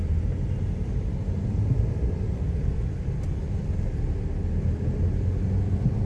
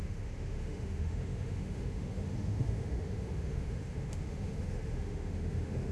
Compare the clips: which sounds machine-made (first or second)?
second